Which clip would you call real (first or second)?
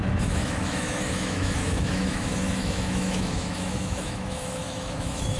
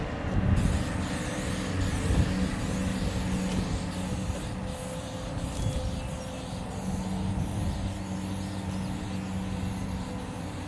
second